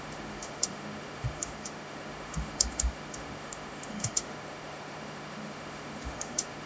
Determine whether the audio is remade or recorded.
remade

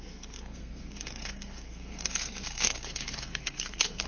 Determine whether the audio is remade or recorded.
remade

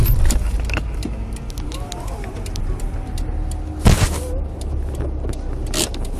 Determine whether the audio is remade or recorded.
recorded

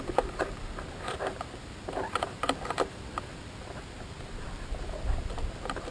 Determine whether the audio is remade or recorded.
recorded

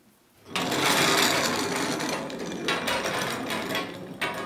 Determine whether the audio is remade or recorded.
recorded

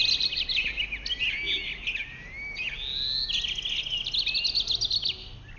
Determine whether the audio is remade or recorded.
recorded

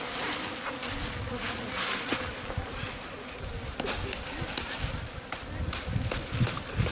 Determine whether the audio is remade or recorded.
recorded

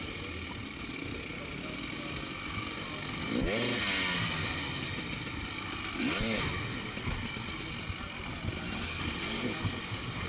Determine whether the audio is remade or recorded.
recorded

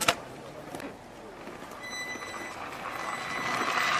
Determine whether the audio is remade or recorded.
recorded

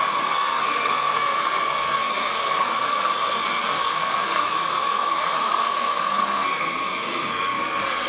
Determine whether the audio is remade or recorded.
remade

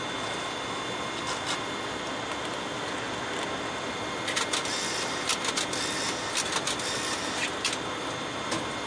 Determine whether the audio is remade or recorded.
recorded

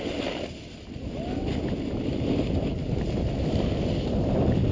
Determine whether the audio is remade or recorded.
recorded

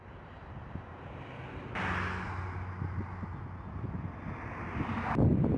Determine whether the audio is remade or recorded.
recorded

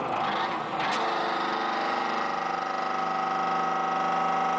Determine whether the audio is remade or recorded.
recorded